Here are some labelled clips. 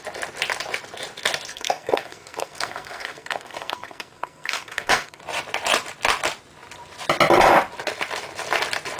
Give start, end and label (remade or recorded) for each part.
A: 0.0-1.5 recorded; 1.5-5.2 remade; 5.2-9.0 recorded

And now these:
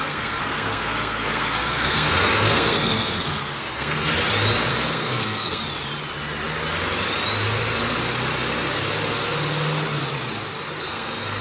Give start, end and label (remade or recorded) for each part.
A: 0.0-4.1 remade; 4.1-4.7 recorded; 4.7-5.6 remade; 5.6-10.8 recorded; 10.8-11.4 remade

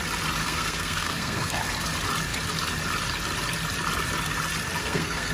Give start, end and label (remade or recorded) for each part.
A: 0.0-0.4 recorded; 0.4-1.6 remade; 1.6-4.8 recorded; 4.8-5.3 remade

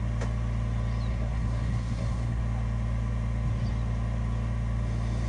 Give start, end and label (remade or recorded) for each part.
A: 0.0-1.1 recorded; 1.1-2.4 remade; 2.4-5.3 recorded

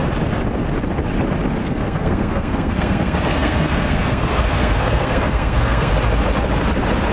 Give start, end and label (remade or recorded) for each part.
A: 0.0-1.6 recorded; 1.6-5.9 remade; 5.9-7.1 recorded

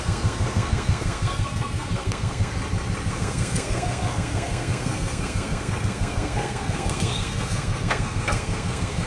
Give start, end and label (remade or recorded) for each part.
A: 0.0-2.5 remade; 2.5-3.1 recorded; 3.1-9.1 remade

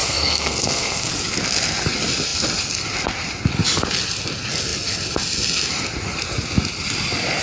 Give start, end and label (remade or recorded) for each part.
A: 0.0-1.1 remade; 1.1-7.4 recorded